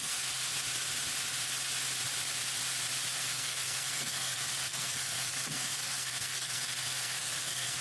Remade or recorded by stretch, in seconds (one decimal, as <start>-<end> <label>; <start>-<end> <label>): 0.0-0.4 remade; 0.4-3.1 recorded; 3.1-7.8 remade